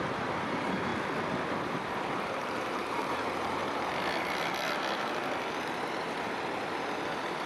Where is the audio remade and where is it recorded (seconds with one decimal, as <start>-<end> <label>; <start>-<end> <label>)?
0.0-0.9 remade; 0.9-1.5 recorded; 1.5-3.6 remade; 3.6-7.5 recorded